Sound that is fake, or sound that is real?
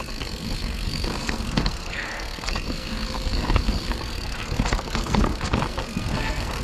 fake